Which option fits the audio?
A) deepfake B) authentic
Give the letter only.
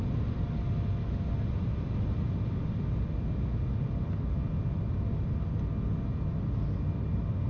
B